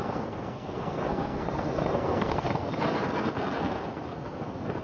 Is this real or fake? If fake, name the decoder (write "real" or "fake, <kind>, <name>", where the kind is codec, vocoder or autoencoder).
fake, codec, SNAC